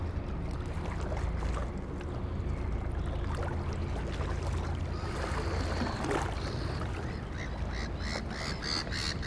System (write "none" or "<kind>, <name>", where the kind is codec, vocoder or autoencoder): none